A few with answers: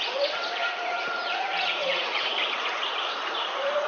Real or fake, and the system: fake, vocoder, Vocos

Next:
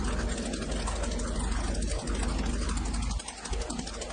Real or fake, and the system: real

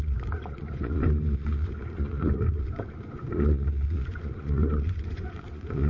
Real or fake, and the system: fake, vocoder, Vocos